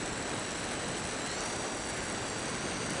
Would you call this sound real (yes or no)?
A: yes